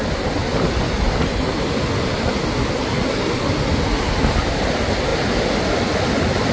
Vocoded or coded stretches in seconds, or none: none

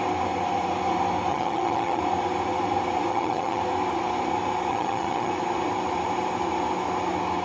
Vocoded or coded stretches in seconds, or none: 1.3-2.0 (vocoder, HiFi-GAN); 3.1-3.6; 4.7-5.3

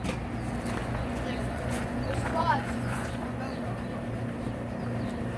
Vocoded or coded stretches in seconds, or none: 0.8-3.6 (vocoder, Vocos)

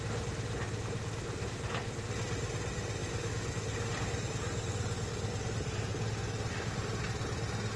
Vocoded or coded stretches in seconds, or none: 3.0-3.5 (autoencoder, DAC-VAE)

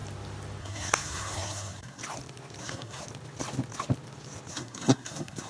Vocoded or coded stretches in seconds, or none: 0.6-2.0 (codec, SNAC); 2.6-3.0; 4.5-5.5